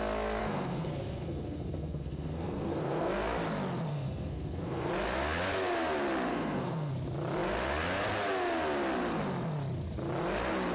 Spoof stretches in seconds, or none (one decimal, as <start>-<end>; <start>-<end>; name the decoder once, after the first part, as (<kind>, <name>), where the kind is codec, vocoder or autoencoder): 0.4-3.1 (codec, SNAC); 3.9-4.9; 6.3-6.9